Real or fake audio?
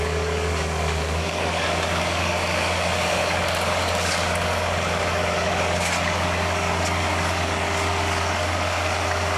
fake